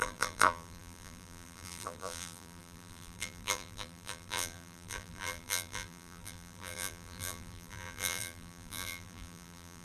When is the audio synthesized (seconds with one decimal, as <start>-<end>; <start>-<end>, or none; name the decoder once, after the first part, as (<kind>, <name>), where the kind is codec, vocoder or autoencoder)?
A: 0.0-9.8 (vocoder, BigVGAN v2)

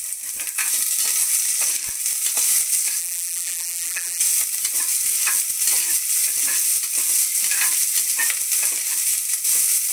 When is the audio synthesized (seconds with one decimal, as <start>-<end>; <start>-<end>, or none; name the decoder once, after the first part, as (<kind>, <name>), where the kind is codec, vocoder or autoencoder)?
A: 3.0-4.2 (vocoder, BigVGAN v2)